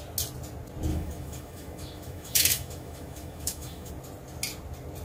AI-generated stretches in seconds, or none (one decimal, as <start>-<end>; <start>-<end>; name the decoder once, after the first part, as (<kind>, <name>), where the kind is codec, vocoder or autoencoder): 0.9-3.9 (autoencoder, DAC-VAE)

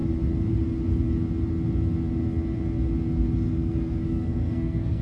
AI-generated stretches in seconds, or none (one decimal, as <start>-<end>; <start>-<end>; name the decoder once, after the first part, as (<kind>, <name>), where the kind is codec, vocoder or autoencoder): 3.5-5.0 (codec, SNAC)